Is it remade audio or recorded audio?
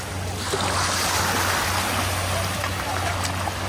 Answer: recorded